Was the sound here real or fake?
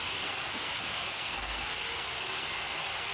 fake